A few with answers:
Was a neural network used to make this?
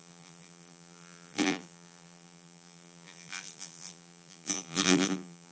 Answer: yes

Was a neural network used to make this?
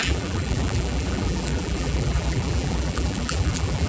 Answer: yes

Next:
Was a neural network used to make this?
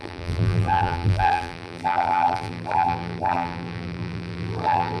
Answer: yes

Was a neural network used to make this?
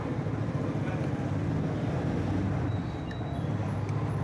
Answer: no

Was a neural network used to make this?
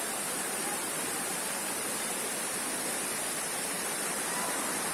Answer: yes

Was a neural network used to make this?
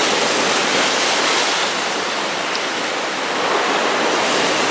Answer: no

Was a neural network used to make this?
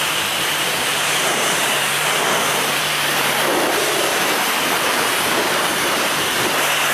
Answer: yes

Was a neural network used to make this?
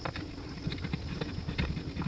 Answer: no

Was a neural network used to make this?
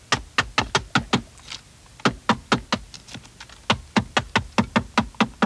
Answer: no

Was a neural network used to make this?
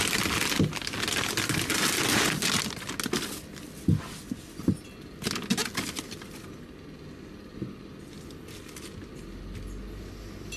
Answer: no